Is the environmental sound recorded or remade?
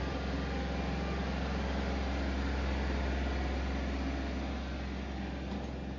recorded